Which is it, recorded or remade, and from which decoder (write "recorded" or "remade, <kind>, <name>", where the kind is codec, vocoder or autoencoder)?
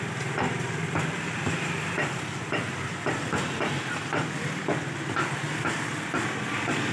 recorded